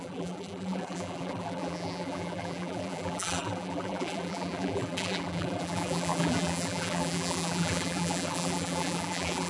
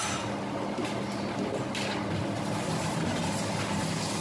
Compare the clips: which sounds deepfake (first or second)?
first